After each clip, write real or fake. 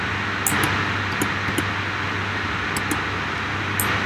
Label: real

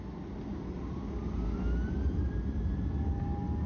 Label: real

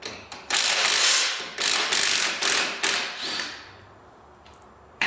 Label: fake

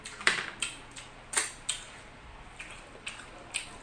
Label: real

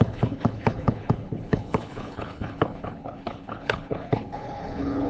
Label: fake